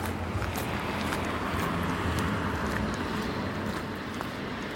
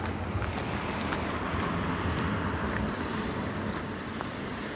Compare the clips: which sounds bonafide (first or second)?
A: first